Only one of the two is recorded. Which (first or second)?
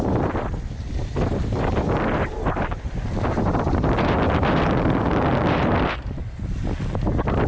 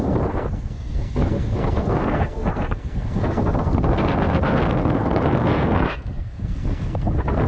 first